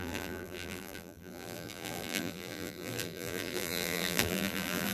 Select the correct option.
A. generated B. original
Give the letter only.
A